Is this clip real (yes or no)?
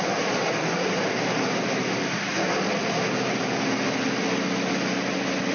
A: yes